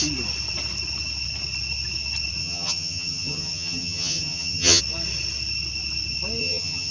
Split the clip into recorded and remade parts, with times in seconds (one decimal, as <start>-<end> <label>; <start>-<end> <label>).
0.0-2.4 recorded; 2.4-4.8 remade; 4.8-6.4 recorded; 6.4-6.9 remade